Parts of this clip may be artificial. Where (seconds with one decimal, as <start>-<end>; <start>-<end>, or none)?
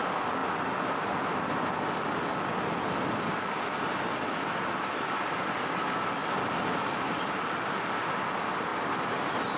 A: none